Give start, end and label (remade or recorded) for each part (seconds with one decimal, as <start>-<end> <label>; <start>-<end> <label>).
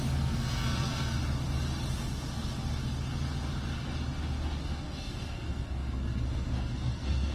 0.0-1.2 remade; 1.2-4.6 recorded; 4.6-7.3 remade